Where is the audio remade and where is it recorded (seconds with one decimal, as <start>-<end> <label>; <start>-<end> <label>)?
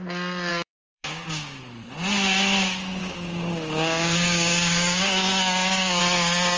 0.0-0.5 recorded; 0.5-1.6 remade; 1.6-3.0 recorded; 3.0-6.0 remade; 6.0-6.6 recorded